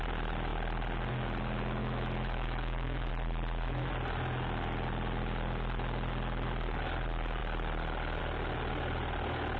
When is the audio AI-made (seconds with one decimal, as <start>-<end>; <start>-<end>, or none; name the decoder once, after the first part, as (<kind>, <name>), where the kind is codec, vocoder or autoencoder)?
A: 1.8-3.1 (autoencoder, DAC-VAE)